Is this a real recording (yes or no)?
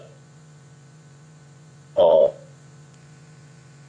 no